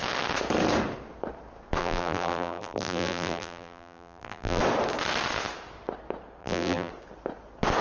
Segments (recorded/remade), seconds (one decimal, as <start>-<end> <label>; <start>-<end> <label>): 0.0-1.8 recorded; 1.8-4.6 remade; 4.6-6.4 recorded; 6.4-6.9 remade; 6.9-7.8 recorded